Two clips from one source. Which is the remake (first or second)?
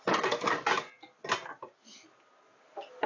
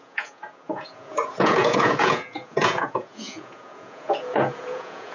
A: second